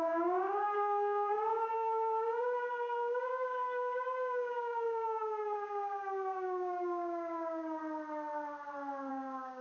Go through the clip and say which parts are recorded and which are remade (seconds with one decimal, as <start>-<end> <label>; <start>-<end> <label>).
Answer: 0.0-7.8 remade; 7.8-9.1 recorded; 9.1-9.6 remade